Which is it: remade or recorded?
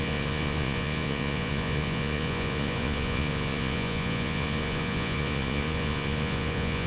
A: remade